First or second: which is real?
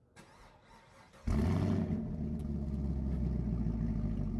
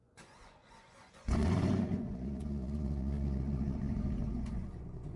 first